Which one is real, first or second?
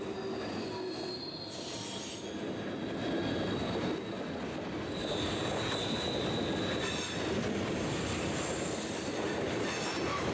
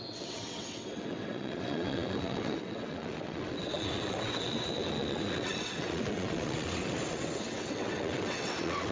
first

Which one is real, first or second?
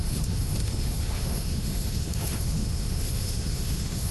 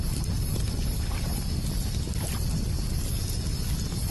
second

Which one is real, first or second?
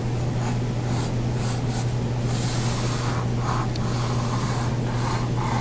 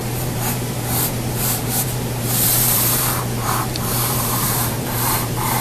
first